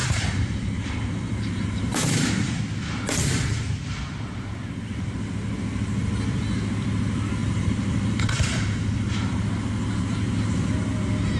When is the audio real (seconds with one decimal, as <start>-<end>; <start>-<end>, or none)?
2.6-7.4; 9.3-11.4